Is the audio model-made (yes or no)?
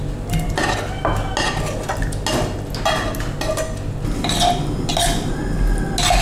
no